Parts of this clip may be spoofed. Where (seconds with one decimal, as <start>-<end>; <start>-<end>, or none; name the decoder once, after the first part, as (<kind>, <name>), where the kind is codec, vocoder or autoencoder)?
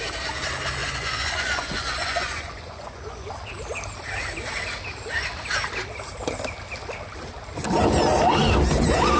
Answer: 0.8-3.3 (vocoder, Vocos)